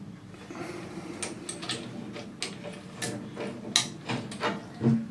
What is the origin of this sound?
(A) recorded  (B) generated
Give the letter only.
A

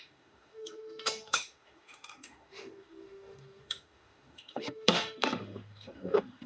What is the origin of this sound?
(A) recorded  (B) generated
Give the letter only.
B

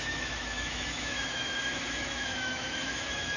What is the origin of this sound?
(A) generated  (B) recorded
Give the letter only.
A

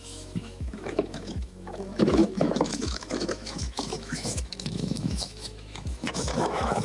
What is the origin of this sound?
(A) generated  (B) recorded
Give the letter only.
A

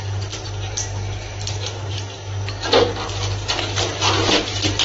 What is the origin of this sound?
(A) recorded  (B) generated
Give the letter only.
A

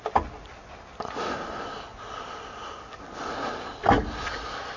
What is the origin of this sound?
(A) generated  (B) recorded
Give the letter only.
B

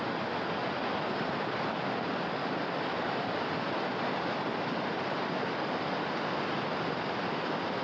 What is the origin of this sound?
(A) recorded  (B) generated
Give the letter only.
A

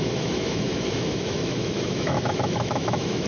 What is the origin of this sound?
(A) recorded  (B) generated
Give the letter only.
B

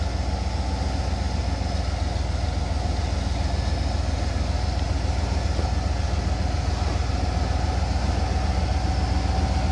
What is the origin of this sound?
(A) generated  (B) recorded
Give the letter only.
B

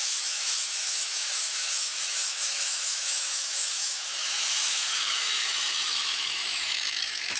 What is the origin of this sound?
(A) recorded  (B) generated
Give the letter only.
B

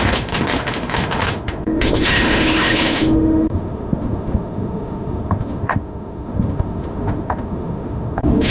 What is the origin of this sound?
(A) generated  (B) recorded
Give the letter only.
A